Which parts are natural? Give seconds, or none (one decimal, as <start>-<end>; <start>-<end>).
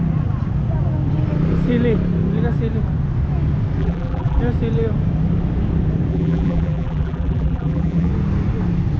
0.0-3.8; 4.4-6.1; 8.1-9.0